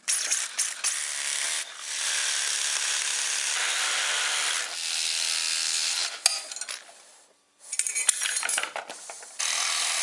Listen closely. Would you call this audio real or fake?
real